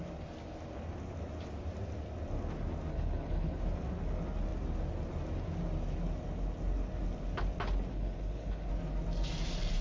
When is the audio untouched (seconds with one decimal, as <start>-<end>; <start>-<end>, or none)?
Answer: 0.0-2.9; 3.6-7.9; 8.7-9.8